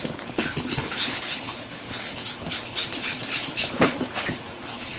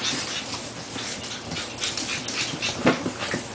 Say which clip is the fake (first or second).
first